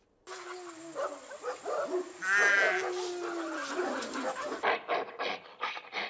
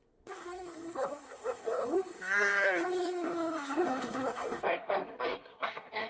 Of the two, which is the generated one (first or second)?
second